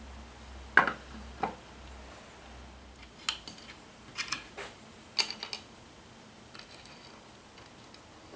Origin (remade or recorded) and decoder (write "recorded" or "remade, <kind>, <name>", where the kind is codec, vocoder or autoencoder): recorded